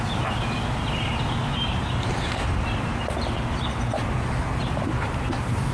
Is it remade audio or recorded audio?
recorded